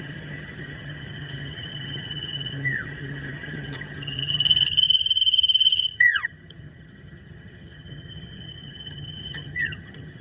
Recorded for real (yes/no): no